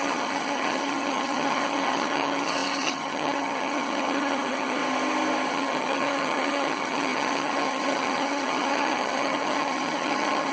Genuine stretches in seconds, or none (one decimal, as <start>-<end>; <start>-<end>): 4.8-5.5